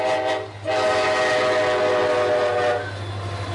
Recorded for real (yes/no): yes